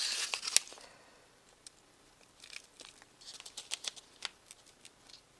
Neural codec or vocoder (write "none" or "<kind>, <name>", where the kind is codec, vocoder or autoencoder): none